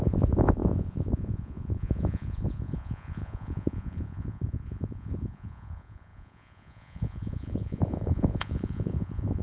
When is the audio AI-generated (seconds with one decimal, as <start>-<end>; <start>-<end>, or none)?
0.0-9.4